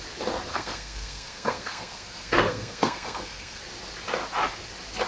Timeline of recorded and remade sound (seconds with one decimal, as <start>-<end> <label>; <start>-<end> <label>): 0.0-0.5 recorded; 0.5-3.6 remade; 3.6-5.1 recorded